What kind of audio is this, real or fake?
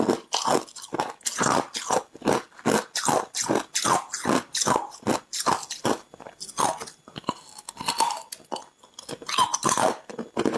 real